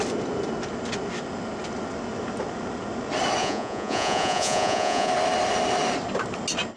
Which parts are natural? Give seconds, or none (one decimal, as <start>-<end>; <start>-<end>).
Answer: 0.0-3.4; 5.1-6.8